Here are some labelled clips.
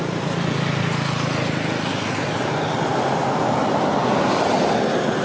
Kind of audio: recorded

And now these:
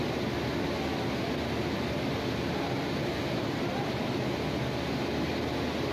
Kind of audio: recorded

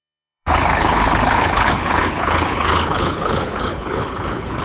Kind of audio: remade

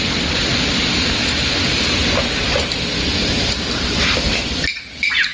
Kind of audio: recorded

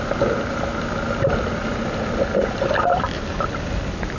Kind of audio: recorded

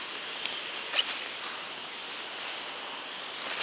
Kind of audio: recorded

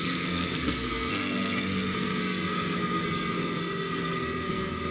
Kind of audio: remade